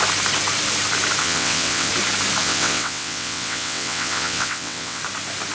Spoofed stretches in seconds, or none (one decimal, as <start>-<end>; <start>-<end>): 1.2-1.9; 2.4-5.0

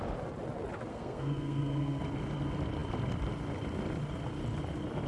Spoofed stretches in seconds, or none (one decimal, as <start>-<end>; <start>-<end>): 0.9-2.0

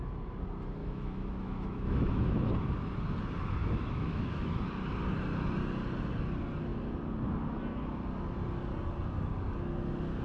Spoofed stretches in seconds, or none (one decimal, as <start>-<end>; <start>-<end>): 0.8-2.5; 3.6-4.6

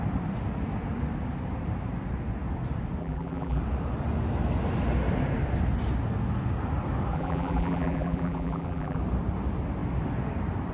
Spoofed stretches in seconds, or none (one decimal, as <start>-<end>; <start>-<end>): 3.0-3.6; 7.1-9.0

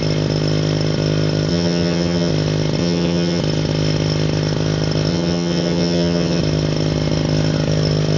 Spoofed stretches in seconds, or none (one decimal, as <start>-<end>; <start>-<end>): 1.5-2.3; 2.8-3.4; 5.1-6.4

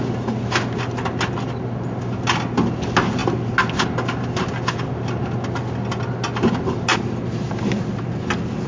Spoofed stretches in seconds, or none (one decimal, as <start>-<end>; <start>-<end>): none

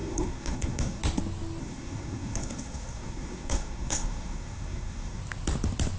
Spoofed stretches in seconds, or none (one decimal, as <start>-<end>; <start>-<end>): 0.0-1.0; 1.6-5.2

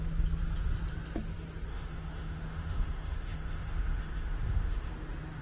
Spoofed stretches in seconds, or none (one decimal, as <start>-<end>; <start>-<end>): 1.7-4.9